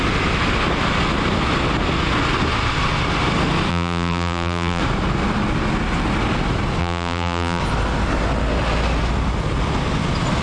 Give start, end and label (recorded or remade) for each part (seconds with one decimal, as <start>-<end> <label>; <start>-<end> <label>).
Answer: 0.0-3.7 recorded; 3.7-4.8 remade; 4.8-6.8 recorded; 6.8-7.6 remade; 7.6-10.4 recorded

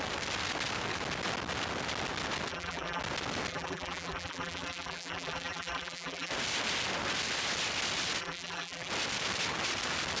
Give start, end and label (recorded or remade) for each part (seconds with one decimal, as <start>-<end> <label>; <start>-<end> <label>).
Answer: 0.0-2.5 recorded; 2.5-3.0 remade; 3.0-3.5 recorded; 3.5-6.3 remade; 6.3-8.2 recorded; 8.2-8.9 remade; 8.9-10.2 recorded

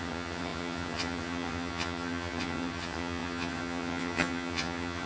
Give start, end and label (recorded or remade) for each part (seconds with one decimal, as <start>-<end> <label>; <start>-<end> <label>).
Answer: 0.0-5.1 remade

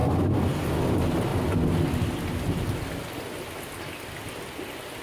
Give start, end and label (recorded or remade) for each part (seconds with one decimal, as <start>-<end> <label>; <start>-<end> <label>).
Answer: 0.0-5.0 recorded

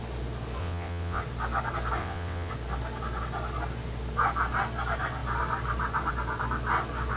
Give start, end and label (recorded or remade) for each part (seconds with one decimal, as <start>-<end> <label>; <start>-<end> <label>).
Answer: 0.0-0.6 recorded; 0.6-1.2 remade; 1.2-2.0 recorded; 2.0-2.5 remade; 2.5-7.2 recorded

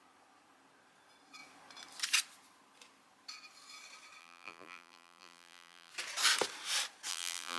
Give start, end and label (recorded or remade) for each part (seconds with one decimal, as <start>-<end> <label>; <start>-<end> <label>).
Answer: 0.0-4.2 recorded; 4.2-5.9 remade; 5.9-7.1 recorded; 7.1-7.6 remade

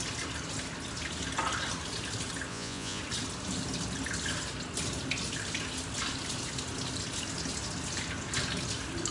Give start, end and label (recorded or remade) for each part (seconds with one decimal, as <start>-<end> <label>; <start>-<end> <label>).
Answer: 0.0-2.5 recorded; 2.5-3.0 remade; 3.0-9.1 recorded

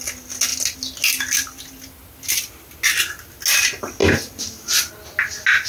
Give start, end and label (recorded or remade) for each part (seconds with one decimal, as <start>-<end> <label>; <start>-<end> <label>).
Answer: 0.0-5.7 recorded